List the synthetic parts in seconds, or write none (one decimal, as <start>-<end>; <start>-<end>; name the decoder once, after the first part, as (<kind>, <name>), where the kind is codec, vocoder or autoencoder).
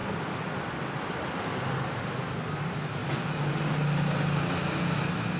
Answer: none